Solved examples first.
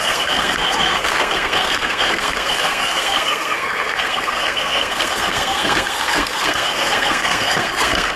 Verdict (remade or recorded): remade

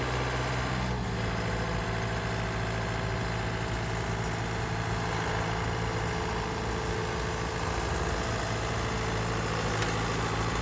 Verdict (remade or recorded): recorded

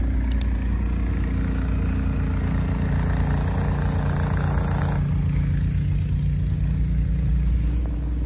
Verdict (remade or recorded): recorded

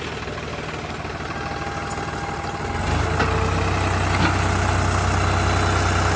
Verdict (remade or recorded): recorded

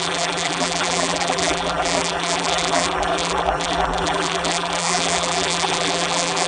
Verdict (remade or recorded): remade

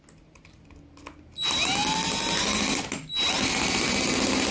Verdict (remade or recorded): recorded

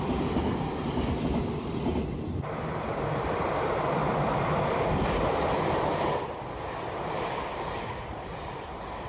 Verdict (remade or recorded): remade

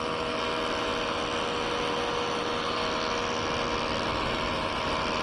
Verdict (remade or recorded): recorded